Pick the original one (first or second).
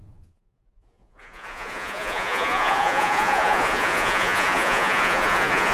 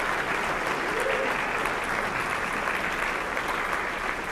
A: second